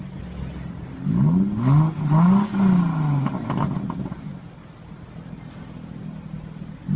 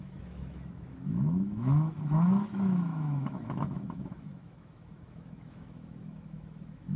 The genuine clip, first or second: first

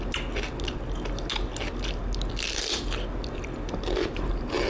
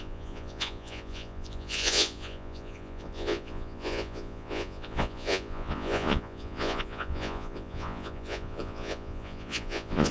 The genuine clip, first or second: first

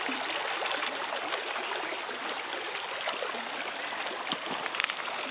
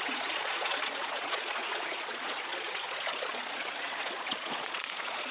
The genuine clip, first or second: first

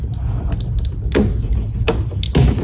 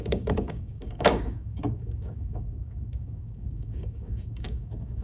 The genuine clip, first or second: first